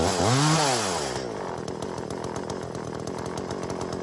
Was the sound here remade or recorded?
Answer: recorded